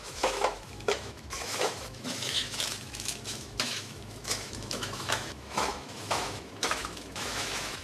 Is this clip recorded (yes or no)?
no